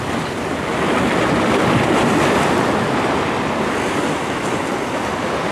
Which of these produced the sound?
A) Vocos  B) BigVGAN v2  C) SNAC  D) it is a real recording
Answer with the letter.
D